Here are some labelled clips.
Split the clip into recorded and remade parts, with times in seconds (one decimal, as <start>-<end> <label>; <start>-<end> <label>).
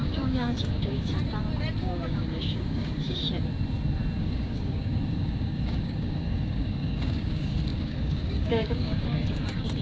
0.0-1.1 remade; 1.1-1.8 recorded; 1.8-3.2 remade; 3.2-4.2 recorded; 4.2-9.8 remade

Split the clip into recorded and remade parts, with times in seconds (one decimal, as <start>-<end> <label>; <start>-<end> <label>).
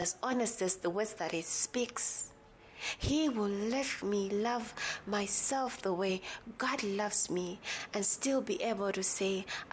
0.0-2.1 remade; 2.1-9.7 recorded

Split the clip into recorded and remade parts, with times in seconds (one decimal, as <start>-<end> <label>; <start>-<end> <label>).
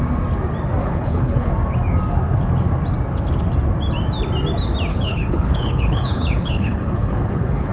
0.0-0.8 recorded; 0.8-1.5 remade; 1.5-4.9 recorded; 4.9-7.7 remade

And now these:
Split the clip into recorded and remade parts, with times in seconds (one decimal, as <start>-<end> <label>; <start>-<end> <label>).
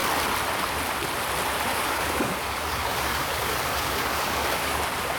0.0-1.7 recorded; 1.7-4.8 remade; 4.8-5.2 recorded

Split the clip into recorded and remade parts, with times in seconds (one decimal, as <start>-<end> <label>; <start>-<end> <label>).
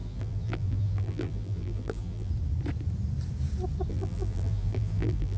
0.0-2.3 remade; 2.3-3.9 recorded; 3.9-5.4 remade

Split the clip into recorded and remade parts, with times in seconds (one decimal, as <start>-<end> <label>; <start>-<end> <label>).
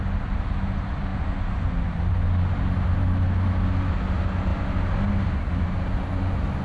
0.0-6.6 recorded